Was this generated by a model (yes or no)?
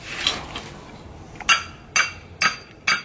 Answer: no